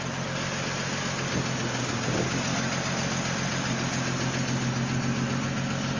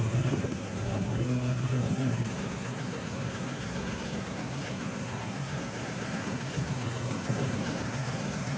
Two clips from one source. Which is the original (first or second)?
first